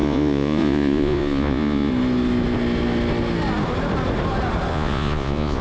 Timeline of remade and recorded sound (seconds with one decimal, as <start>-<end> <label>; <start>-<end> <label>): 0.0-1.9 remade; 1.9-4.7 recorded; 4.7-5.6 remade